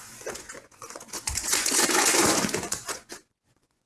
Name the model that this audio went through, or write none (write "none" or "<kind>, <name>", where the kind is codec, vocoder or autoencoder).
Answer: vocoder, Vocos